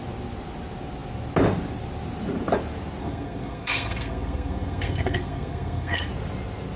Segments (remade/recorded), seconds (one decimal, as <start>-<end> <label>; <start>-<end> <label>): 0.0-3.0 recorded; 3.0-6.1 remade; 6.1-6.8 recorded